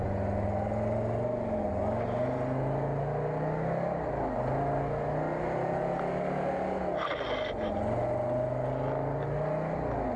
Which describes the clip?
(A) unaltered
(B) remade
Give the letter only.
A